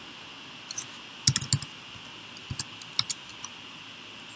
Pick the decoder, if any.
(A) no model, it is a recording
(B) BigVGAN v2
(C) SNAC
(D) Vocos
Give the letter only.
A